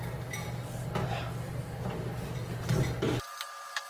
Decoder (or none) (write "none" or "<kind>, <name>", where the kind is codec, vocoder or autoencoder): none